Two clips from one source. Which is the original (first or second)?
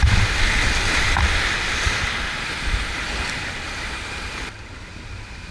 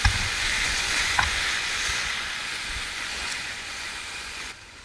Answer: first